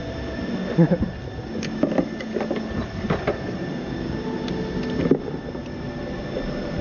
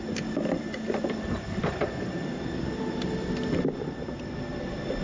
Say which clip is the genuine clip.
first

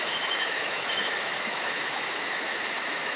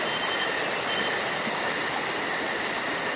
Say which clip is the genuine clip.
second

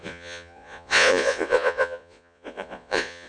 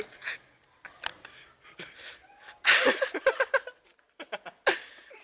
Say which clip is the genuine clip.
second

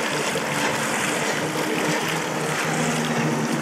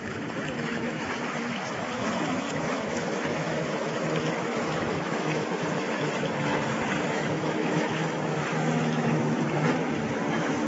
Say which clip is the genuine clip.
first